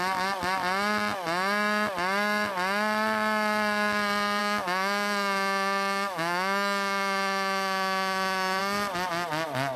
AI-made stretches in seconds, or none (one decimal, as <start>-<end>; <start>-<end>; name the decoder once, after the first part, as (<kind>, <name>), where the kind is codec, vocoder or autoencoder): 4.4-8.6 (autoencoder, DAC-VAE)